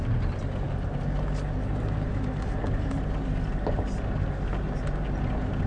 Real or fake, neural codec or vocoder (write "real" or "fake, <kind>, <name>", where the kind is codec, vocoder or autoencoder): real